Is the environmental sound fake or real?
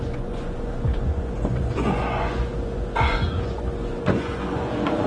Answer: fake